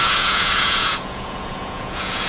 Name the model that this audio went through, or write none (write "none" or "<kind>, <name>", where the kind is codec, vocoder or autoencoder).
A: vocoder, Vocos